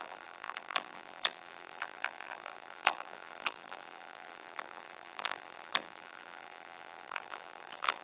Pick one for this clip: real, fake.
fake